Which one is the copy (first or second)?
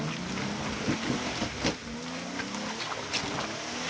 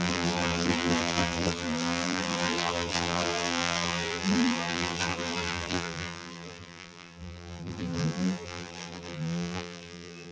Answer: second